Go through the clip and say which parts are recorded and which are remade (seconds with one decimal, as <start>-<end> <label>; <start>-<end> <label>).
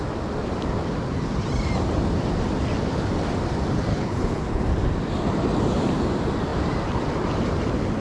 0.0-3.9 recorded; 3.9-4.6 remade; 4.6-8.0 recorded